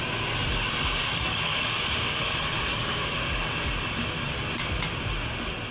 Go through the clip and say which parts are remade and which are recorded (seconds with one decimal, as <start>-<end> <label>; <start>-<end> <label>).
0.0-1.0 recorded; 1.0-2.2 remade; 2.2-2.7 recorded; 2.7-3.3 remade; 3.3-5.7 recorded